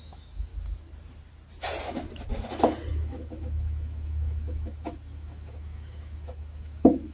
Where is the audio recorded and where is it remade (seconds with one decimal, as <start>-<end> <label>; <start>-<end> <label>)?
0.0-0.5 remade; 0.5-2.9 recorded; 2.9-7.1 remade